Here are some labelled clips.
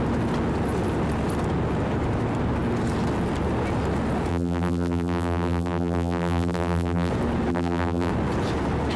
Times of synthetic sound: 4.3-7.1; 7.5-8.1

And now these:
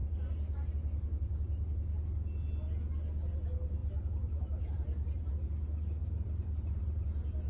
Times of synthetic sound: 3.8-5.3; 6.0-6.8

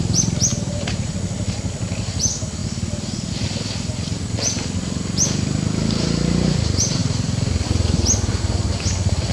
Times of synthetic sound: 0.5-1.1; 7.0-7.5

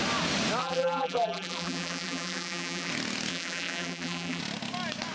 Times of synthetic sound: 0.6-2.9; 3.3-4.4